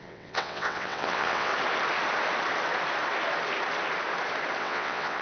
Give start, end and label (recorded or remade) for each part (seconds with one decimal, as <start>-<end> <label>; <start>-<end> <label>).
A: 0.0-1.5 remade; 1.5-4.6 recorded; 4.6-5.2 remade